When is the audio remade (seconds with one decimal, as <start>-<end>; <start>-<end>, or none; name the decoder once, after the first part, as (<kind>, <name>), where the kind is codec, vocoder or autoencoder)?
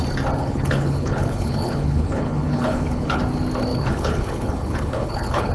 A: 0.4-3.2 (codec, HILCodec); 3.7-5.5